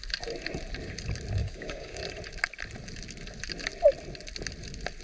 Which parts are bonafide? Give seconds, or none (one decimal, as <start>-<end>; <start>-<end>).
0.0-1.4; 2.0-5.0